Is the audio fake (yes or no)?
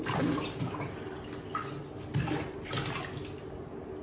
no